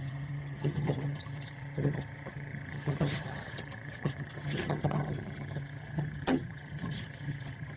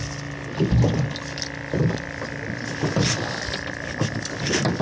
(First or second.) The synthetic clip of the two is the first